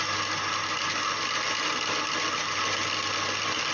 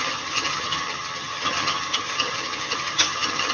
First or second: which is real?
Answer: first